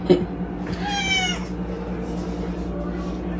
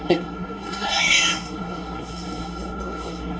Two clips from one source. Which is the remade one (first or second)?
second